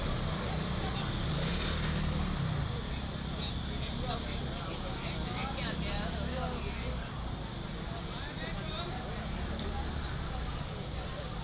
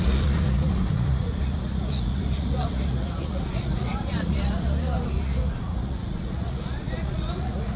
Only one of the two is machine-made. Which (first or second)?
second